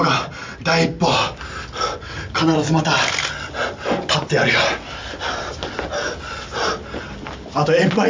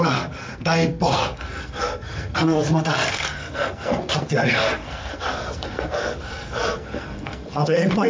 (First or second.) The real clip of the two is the first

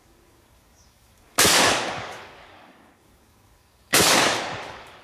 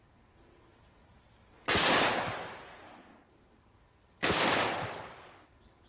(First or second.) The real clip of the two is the second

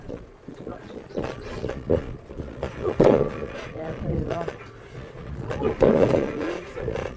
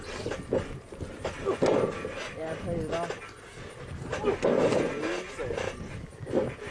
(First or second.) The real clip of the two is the second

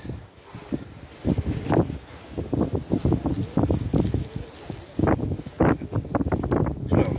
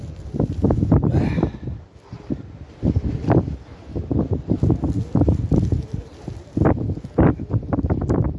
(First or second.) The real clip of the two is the first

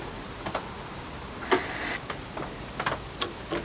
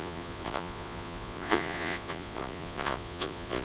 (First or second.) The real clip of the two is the first